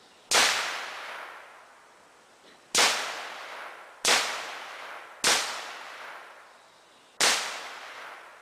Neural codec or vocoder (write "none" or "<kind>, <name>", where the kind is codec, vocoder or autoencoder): none